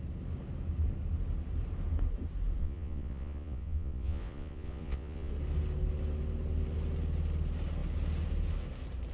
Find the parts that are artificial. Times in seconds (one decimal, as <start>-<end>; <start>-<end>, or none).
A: 2.6-5.3